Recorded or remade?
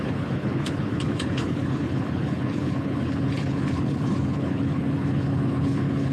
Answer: remade